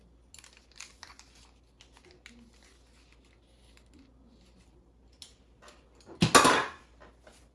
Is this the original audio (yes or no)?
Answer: yes